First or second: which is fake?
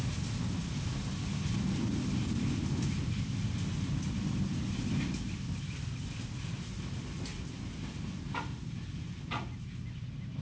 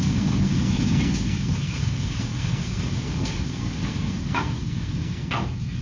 second